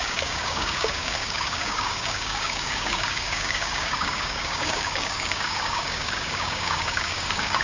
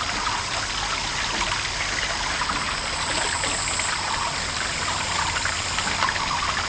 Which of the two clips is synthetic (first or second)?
first